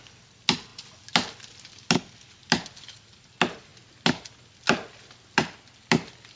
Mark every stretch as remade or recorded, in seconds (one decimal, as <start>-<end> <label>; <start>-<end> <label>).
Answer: 0.0-6.4 recorded